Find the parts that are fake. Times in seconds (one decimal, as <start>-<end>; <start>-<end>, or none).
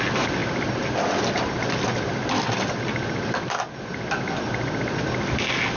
none